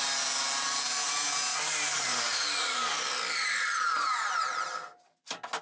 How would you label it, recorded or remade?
recorded